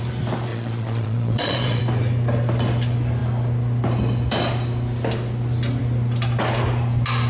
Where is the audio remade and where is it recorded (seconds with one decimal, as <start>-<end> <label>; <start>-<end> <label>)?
0.0-0.5 recorded; 0.5-1.8 remade; 1.8-7.3 recorded